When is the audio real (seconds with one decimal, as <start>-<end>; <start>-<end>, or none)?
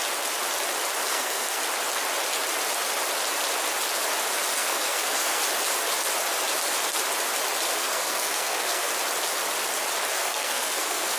0.0-1.1; 1.6-4.5; 5.4-7.7; 8.9-10.1